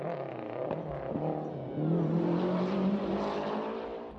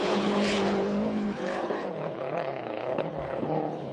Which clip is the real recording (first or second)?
first